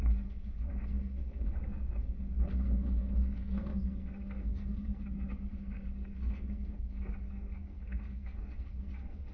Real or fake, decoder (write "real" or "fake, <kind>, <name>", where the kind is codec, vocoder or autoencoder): fake, codec, SNAC